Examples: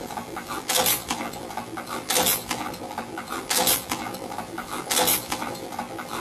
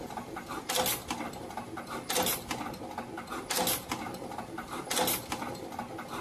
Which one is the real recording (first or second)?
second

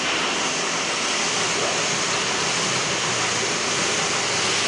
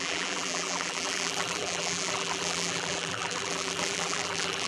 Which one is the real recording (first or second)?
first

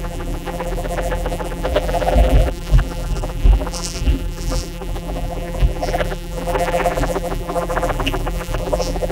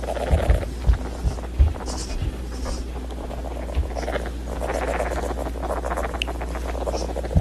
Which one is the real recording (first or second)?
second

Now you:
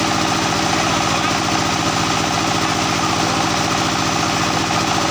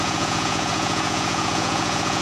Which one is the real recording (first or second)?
first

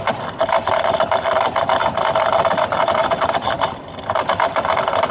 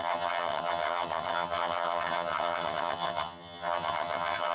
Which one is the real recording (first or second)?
first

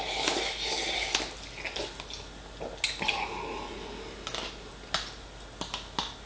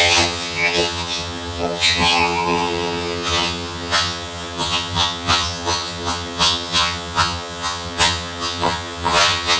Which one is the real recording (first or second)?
first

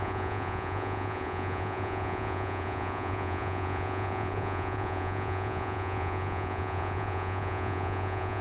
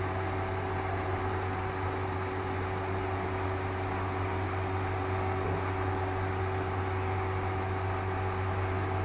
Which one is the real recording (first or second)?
second